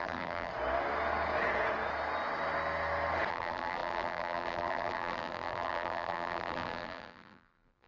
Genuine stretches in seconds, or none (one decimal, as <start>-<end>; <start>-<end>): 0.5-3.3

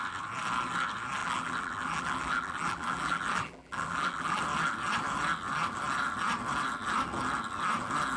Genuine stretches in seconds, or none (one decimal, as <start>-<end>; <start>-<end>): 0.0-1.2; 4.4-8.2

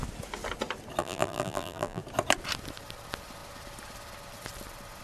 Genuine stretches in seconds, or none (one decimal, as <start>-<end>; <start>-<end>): 0.0-1.0; 2.0-5.0